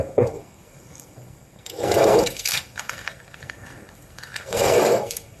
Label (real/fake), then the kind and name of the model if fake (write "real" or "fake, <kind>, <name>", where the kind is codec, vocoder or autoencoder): fake, codec, SNAC